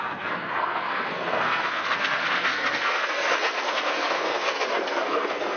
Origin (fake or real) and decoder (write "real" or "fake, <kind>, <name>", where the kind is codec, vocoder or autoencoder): fake, codec, SNAC